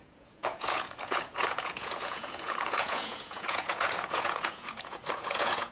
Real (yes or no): no